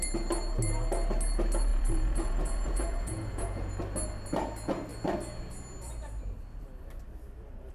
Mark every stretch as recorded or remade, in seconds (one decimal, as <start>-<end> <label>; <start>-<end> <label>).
0.0-1.7 recorded; 1.7-3.7 remade; 3.7-7.7 recorded